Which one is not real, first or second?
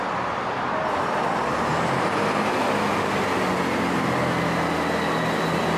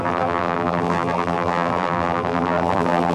second